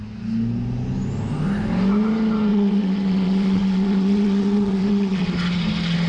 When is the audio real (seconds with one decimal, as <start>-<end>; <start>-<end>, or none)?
0.0-2.5; 5.3-6.1